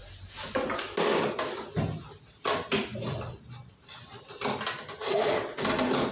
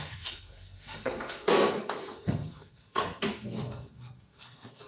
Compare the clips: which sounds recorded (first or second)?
first